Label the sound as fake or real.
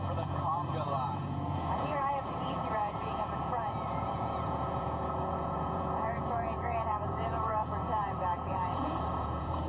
fake